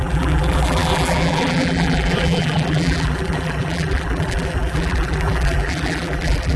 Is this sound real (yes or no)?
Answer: no